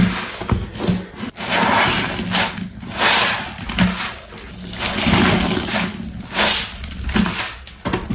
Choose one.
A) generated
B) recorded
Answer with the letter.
B